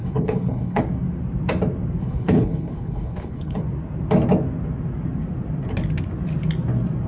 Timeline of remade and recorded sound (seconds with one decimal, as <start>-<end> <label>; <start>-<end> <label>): 0.0-0.8 remade; 0.8-2.0 recorded; 2.0-3.6 remade; 3.6-7.1 recorded

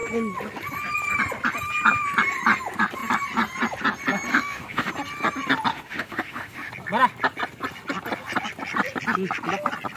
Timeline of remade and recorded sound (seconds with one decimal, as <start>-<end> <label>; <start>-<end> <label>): 0.0-4.3 recorded; 4.3-4.9 remade; 4.9-5.7 recorded; 5.7-6.7 remade; 6.7-10.0 recorded

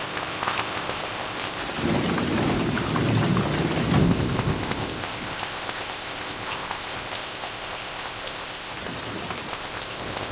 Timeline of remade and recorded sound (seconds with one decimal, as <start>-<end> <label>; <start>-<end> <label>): 0.0-1.6 remade; 1.6-4.0 recorded; 4.0-8.7 remade; 8.7-9.5 recorded; 9.5-10.3 remade

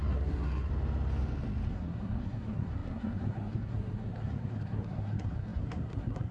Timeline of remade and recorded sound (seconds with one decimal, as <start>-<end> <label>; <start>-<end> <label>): 0.0-0.7 remade; 0.7-1.7 recorded; 1.7-6.3 remade

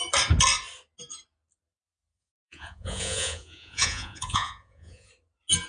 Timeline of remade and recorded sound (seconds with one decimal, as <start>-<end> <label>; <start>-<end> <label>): 0.0-2.1 recorded; 2.1-5.1 remade; 5.1-5.7 recorded

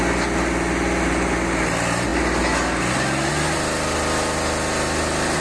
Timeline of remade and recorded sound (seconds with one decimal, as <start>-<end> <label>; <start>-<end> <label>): 0.0-5.4 recorded

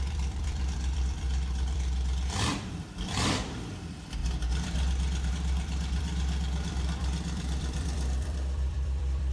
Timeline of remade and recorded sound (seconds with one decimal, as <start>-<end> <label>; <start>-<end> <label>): 0.0-4.2 remade; 4.2-5.3 recorded; 5.3-9.3 remade

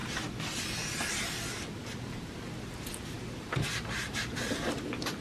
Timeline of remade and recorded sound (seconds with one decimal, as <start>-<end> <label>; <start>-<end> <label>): 0.0-1.9 recorded; 1.9-5.2 remade